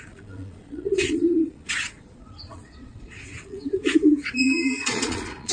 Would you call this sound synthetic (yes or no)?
yes